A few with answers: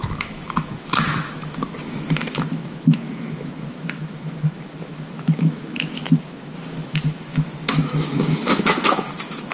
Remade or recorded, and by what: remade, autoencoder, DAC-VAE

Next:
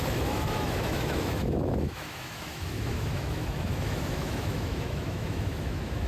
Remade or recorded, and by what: remade, autoencoder, DAC-VAE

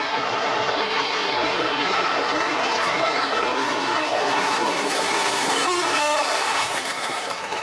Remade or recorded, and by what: remade, codec, SNAC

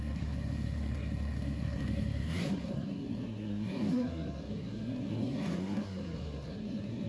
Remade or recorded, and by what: remade, codec, SNAC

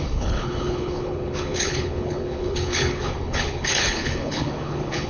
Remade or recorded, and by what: remade, codec, HILCodec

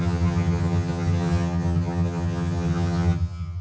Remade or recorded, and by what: remade, vocoder, HiFi-GAN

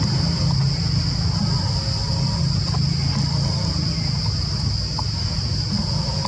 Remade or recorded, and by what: recorded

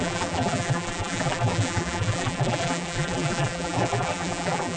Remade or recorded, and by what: remade, vocoder, BigVGAN v2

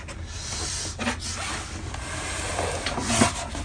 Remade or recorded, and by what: recorded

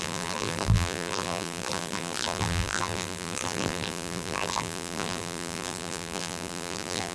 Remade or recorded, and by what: remade, vocoder, BigVGAN v2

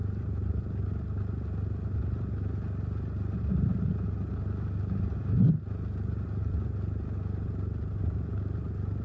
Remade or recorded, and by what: recorded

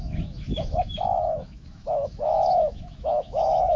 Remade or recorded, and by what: remade, autoencoder, DAC-VAE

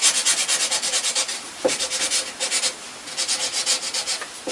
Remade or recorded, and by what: recorded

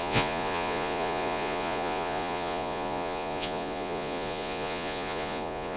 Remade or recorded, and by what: remade, vocoder, Vocos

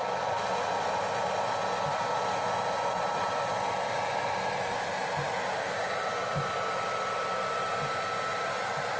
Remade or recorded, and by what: recorded